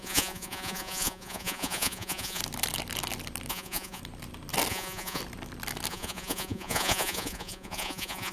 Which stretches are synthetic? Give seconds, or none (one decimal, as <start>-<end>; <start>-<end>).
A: 0.0-2.4; 3.5-4.0; 4.7-5.2; 5.9-8.3

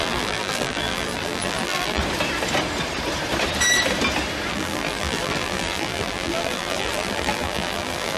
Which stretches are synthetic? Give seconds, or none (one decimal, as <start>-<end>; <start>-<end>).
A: 0.0-2.0; 4.5-8.2

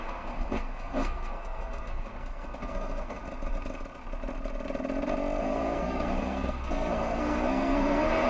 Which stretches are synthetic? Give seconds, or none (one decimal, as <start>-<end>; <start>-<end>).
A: 0.0-3.2; 5.4-8.3

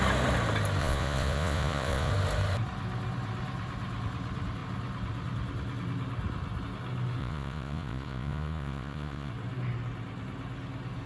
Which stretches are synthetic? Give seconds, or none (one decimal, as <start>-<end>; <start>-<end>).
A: 0.8-2.1; 7.2-9.3

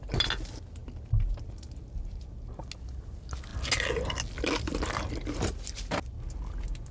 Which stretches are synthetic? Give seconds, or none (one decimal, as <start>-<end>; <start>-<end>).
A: none